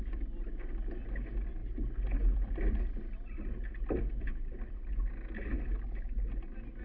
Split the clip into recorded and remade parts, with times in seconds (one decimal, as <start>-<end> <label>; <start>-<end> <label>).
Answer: 0.0-6.8 recorded